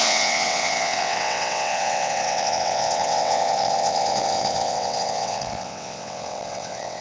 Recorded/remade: remade